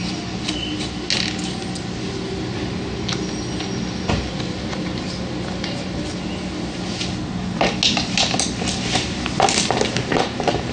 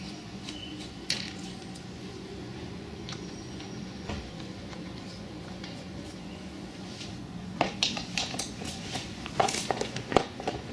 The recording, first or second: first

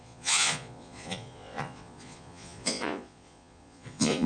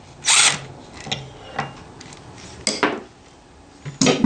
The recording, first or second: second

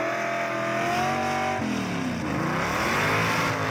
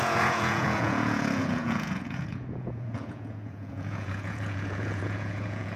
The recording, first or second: first